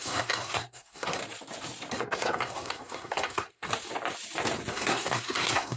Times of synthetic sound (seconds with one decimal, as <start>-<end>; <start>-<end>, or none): 0.0-1.2; 1.9-3.7; 4.7-5.8